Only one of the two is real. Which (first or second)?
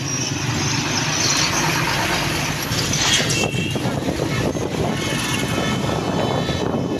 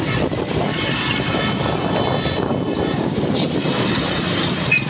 first